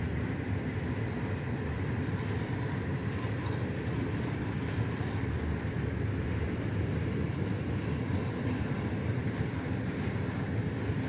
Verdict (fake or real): real